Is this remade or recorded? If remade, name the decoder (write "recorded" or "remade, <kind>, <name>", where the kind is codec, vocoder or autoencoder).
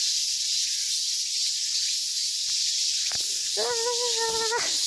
recorded